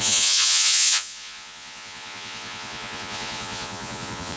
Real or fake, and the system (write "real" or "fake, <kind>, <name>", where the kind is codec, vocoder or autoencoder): fake, vocoder, Vocos